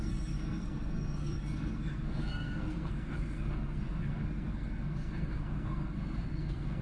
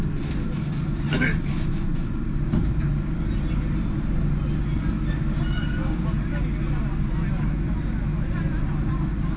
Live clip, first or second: second